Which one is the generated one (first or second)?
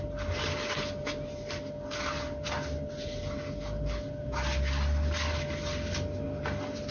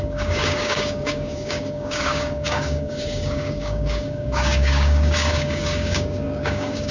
second